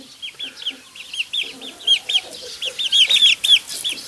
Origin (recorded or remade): recorded